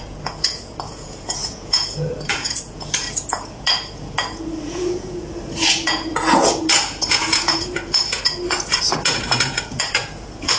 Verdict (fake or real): fake